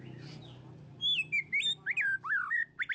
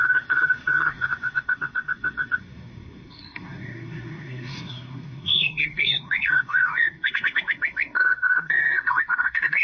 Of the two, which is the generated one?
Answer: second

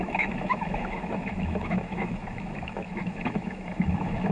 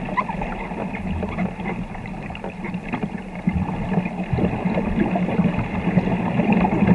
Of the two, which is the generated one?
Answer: first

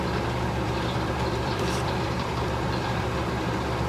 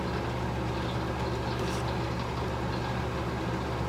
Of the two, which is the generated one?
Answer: first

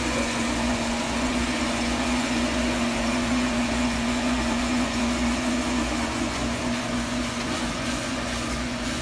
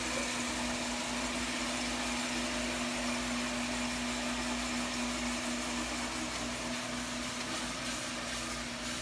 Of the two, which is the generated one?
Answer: first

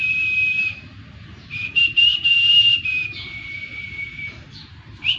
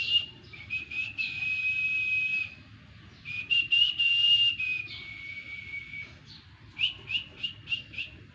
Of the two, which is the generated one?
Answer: first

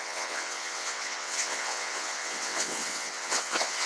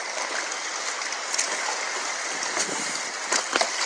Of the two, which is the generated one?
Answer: first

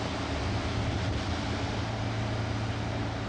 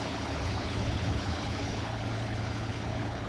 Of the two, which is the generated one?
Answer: second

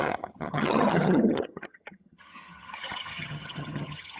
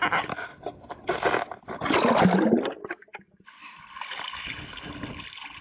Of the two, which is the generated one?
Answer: first